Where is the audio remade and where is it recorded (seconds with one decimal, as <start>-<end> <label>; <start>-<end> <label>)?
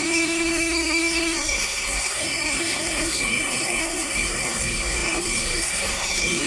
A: 0.0-6.5 remade